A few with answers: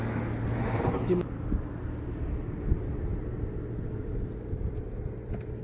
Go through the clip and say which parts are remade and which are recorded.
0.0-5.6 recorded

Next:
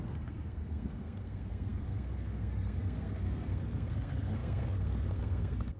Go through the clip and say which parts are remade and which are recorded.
0.0-5.8 remade

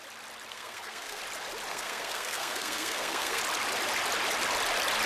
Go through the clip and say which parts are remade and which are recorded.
0.0-0.5 recorded; 0.5-1.2 remade; 1.2-1.7 recorded; 1.7-3.4 remade; 3.4-5.1 recorded